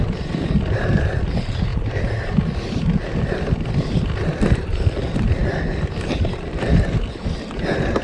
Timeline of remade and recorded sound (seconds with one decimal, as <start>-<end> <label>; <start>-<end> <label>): 0.0-8.0 recorded